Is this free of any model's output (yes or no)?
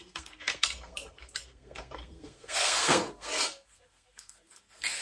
no